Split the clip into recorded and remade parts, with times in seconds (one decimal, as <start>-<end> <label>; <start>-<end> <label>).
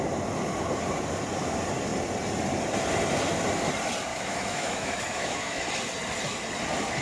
0.0-4.1 recorded; 4.1-5.7 remade; 5.7-7.0 recorded